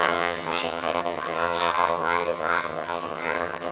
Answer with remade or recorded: remade